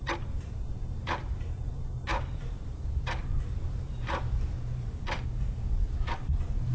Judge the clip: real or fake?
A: fake